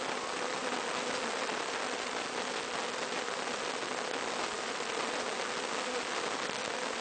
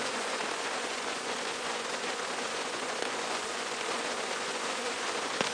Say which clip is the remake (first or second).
second